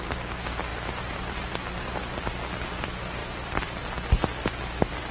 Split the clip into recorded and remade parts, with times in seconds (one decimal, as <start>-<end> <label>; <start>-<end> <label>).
0.0-0.7 recorded; 0.7-2.0 remade; 2.0-3.2 recorded; 3.2-3.9 remade; 3.9-5.1 recorded